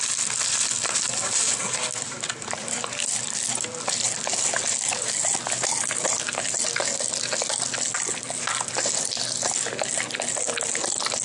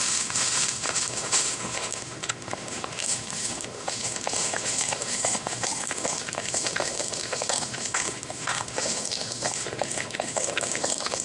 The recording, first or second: first